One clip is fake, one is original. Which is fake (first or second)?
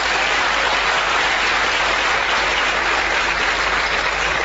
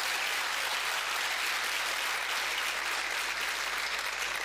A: first